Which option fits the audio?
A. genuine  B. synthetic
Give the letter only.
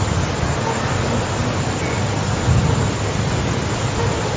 A